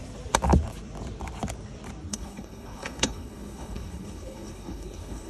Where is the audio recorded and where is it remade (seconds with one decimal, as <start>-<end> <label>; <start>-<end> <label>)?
0.0-2.1 recorded; 2.1-5.3 remade